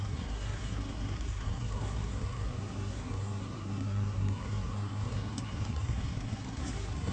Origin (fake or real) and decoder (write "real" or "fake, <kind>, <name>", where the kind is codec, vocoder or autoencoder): fake, codec, SNAC